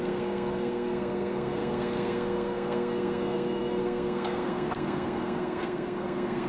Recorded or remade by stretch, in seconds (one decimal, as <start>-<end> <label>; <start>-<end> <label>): 0.0-6.5 remade